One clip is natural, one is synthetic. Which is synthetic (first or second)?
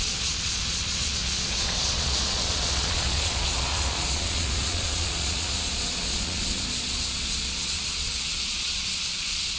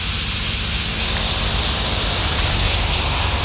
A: first